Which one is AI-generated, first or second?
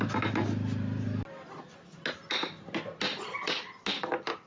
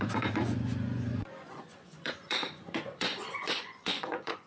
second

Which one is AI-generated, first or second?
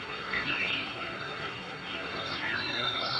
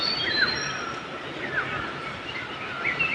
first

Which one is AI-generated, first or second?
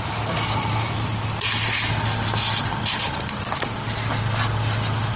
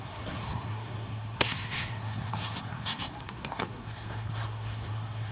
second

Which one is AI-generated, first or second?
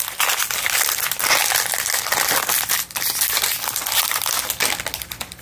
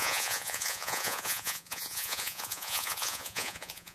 second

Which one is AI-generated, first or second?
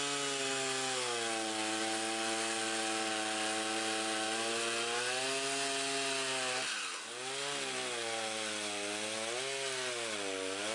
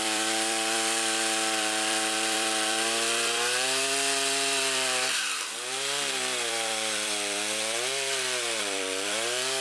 second